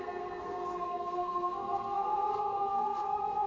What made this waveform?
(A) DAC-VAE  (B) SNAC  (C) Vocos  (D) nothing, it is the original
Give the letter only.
B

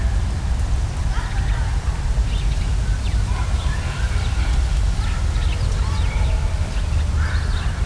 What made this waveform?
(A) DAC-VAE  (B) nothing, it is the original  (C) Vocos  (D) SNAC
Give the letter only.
B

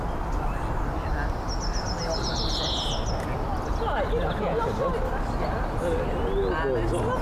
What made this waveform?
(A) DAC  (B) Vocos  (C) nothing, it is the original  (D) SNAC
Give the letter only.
C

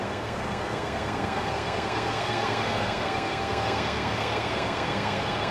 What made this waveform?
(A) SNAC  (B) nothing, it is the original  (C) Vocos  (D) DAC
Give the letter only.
A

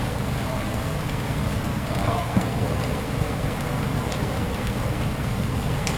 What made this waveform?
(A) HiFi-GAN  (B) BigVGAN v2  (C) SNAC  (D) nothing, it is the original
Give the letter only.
C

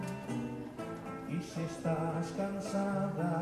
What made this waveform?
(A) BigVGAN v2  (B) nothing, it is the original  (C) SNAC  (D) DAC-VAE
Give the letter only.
B